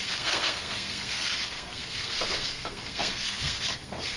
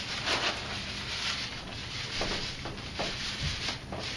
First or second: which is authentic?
second